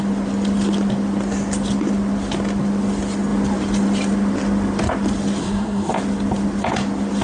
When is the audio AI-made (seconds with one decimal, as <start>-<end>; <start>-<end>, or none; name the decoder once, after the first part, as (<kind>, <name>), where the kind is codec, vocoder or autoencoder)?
5.4-5.9 (codec, SNAC)